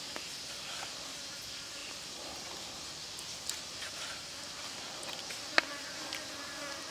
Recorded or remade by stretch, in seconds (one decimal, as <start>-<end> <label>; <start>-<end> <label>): 0.0-6.9 recorded